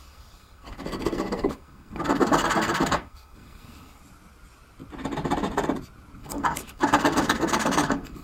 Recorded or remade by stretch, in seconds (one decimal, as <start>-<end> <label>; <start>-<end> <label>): 0.0-4.0 remade; 4.0-6.2 recorded; 6.2-8.2 remade